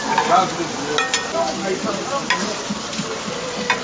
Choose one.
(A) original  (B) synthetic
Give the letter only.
A